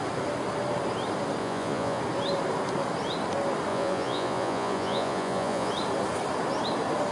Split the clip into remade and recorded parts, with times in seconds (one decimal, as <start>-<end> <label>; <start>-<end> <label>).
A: 0.0-1.4 recorded; 1.4-2.0 remade; 2.0-3.7 recorded; 3.7-5.7 remade; 5.7-7.1 recorded